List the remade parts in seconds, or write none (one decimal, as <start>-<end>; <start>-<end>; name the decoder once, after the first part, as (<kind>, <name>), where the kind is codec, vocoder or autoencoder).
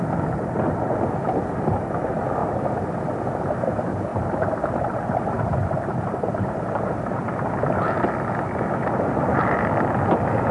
2.4-3.0 (vocoder, BigVGAN v2); 4.1-7.2